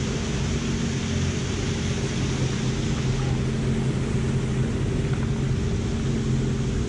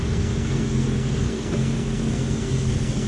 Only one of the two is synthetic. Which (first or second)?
second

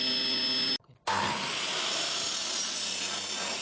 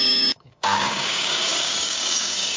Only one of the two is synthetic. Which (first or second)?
second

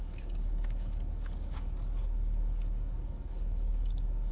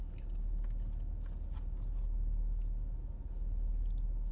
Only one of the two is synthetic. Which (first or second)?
first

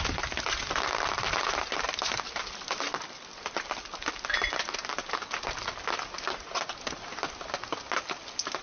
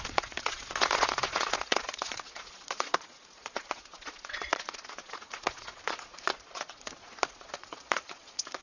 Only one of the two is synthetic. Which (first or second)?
second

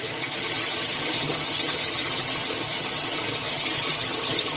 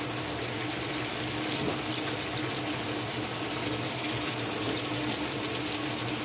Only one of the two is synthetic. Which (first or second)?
first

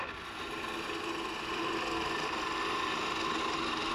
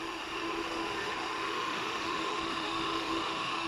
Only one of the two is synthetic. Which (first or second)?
second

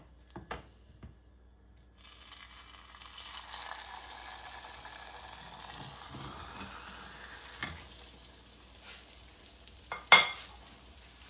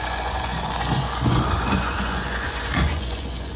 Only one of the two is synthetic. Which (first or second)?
second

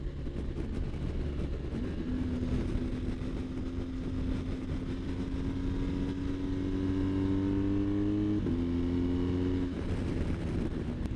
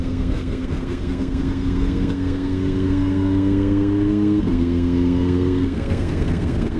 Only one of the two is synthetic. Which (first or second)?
second